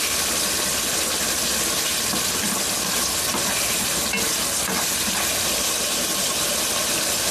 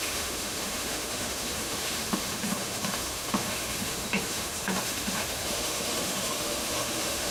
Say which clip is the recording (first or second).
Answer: first